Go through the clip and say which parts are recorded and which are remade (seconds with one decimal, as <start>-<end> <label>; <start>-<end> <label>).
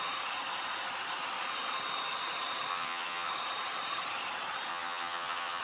0.0-2.7 recorded; 2.7-3.3 remade; 3.3-4.7 recorded; 4.7-5.6 remade